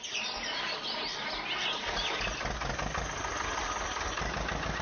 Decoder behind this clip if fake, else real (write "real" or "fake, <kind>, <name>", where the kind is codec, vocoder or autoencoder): real